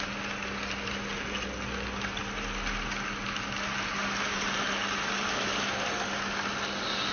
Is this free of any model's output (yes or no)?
yes